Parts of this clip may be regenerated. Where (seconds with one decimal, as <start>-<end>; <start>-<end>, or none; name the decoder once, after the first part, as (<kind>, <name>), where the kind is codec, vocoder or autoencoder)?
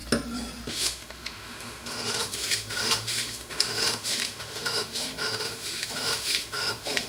0.7-7.1 (autoencoder, DAC-VAE)